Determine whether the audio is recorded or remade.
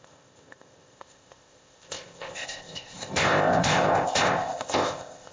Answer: remade